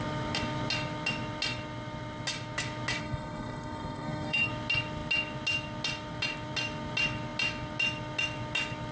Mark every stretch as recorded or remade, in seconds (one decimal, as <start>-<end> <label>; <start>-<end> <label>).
0.0-3.0 recorded; 3.0-4.5 remade; 4.5-8.9 recorded